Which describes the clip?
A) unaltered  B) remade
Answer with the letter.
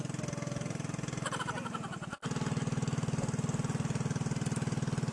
A